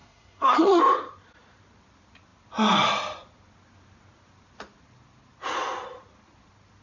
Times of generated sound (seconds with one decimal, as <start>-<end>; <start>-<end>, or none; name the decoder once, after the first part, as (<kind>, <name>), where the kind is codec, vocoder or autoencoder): 0.0-0.8 (codec, SNAC)